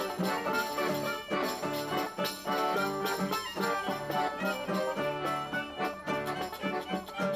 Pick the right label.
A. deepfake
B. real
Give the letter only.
B